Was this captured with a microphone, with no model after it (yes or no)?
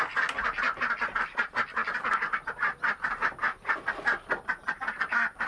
yes